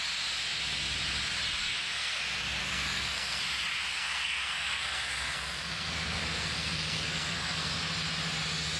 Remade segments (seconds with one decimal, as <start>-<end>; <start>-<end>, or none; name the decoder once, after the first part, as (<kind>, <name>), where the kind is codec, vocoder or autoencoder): 1.6-2.2 (codec, SNAC); 2.6-3.4; 3.9-7.7